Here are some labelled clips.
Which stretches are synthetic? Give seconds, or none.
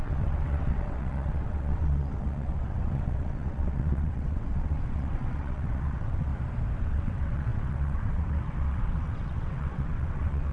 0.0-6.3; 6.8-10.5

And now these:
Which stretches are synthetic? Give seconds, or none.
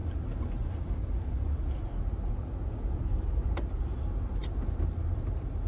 none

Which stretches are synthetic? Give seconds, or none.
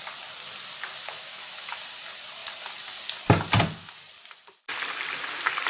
1.0-1.8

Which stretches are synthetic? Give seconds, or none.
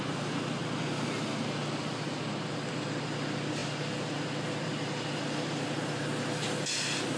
none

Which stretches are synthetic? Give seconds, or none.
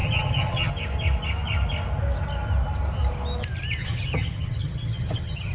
0.0-0.7; 3.8-5.5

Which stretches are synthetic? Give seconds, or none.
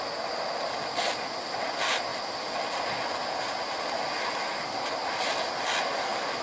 none